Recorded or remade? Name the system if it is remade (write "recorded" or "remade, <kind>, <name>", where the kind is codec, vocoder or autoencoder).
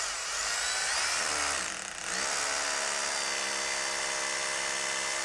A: recorded